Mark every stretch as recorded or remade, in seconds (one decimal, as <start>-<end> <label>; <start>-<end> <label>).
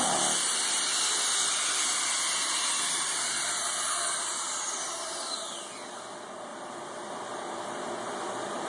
0.0-2.4 recorded; 2.4-5.6 remade; 5.6-6.5 recorded; 6.5-7.9 remade; 7.9-8.7 recorded